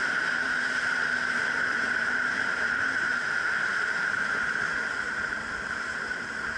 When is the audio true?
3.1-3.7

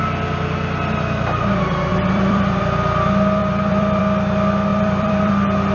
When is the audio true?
0.0-1.9; 2.6-3.4; 4.0-4.7; 5.3-5.7

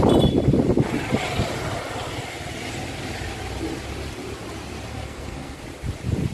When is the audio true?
0.0-4.9; 5.6-6.3

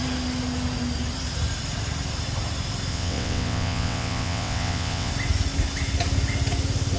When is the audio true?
0.0-2.9; 5.1-7.0

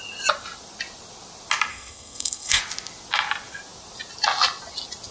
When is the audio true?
0.0-1.7; 2.6-5.1

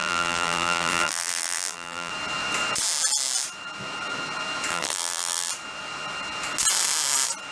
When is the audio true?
2.1-4.7; 5.5-7.5

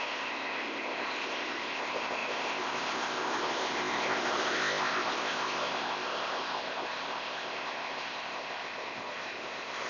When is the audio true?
none